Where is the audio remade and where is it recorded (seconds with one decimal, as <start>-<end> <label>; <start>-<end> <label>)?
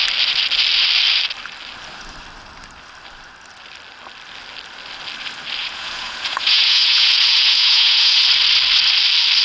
0.0-5.6 recorded; 5.6-8.3 remade; 8.3-9.4 recorded